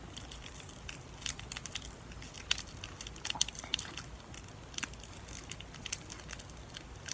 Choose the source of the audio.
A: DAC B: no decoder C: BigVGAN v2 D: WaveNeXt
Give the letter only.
B